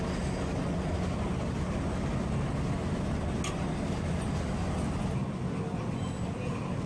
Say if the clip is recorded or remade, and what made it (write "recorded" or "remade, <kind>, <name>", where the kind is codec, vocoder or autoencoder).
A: recorded